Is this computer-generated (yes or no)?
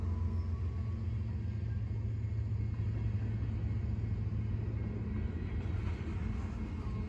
no